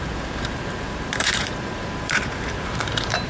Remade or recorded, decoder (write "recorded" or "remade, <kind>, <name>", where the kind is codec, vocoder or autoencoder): remade, vocoder, BigVGAN v2